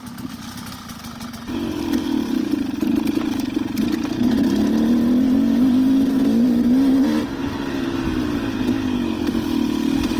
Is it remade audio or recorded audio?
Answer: recorded